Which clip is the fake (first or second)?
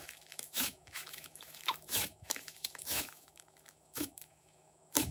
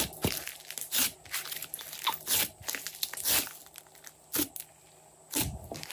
first